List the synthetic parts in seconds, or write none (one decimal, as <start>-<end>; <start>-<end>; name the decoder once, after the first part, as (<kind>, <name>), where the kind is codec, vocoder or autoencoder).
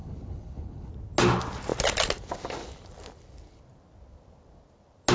0.0-0.9 (codec, HILCodec)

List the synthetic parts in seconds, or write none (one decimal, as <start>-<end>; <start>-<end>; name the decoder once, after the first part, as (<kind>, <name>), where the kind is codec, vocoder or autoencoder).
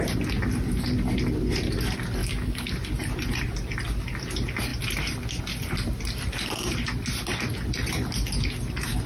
2.2-2.7 (codec, DAC)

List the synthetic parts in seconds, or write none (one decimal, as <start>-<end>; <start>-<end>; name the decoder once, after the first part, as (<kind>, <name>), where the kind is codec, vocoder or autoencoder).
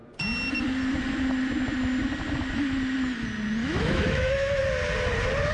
3.6-4.6 (autoencoder, DAC-VAE)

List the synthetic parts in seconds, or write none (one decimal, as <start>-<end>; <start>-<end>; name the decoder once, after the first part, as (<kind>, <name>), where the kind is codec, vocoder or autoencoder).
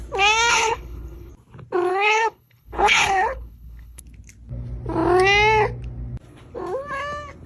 0.5-1.3 (codec, HILCodec); 1.9-4.0